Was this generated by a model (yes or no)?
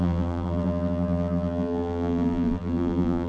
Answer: yes